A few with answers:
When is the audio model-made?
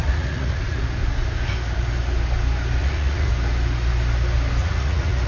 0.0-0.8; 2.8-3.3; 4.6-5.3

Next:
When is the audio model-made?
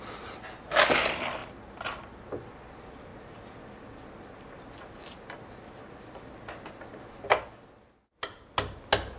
none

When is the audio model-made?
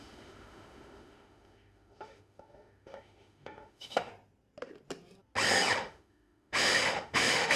0.0-4.1; 5.8-7.6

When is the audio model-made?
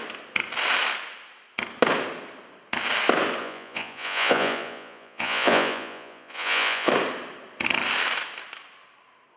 3.4-6.9